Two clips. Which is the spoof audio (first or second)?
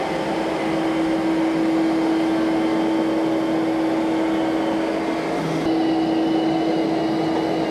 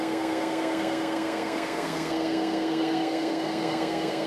second